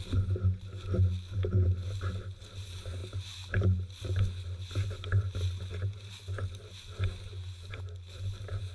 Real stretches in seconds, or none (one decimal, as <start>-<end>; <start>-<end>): 0.0-8.7